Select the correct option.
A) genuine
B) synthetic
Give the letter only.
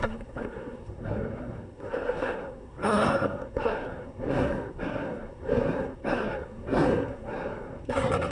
B